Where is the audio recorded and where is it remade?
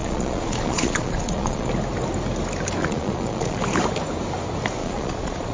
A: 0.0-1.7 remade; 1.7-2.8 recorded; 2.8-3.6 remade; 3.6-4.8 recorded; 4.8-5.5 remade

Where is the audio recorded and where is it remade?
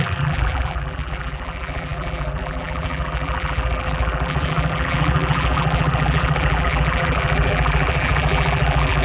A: 0.0-9.0 remade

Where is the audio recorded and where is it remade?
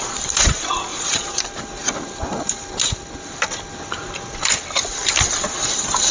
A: 0.0-0.9 recorded; 0.9-1.4 remade; 1.4-6.1 recorded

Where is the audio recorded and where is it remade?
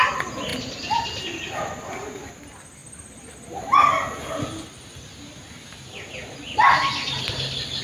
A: 0.0-7.8 recorded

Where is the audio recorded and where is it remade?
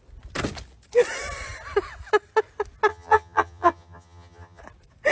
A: 0.0-2.9 recorded; 2.9-4.6 remade; 4.6-5.1 recorded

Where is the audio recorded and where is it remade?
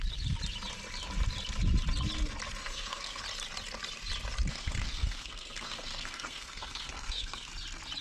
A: 0.0-2.6 recorded; 2.6-3.2 remade; 3.2-4.5 recorded; 4.5-7.5 remade; 7.5-8.0 recorded